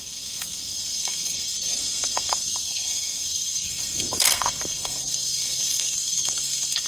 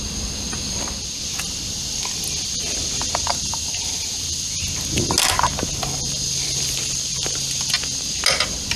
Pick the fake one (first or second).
first